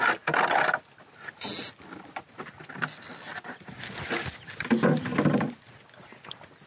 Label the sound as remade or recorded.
recorded